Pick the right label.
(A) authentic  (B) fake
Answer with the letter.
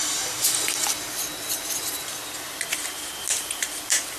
B